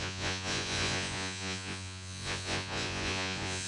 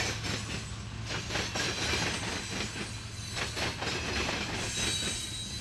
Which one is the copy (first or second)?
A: first